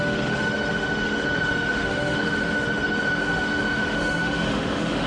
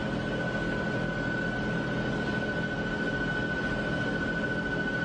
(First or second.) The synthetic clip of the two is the first